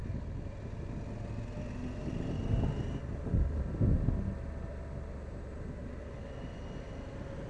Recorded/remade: recorded